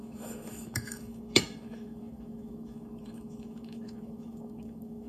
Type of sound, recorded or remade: remade